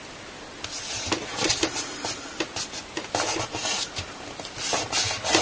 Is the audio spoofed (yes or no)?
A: no